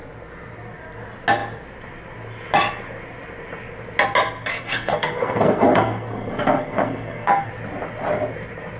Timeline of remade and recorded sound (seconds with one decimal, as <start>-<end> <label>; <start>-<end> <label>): 0.0-4.5 recorded; 4.5-7.5 remade; 7.5-8.8 recorded